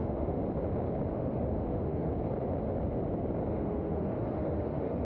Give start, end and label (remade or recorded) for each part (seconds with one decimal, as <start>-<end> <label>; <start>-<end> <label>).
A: 0.0-0.4 remade; 0.4-1.1 recorded; 1.1-2.1 remade; 2.1-3.5 recorded; 3.5-5.0 remade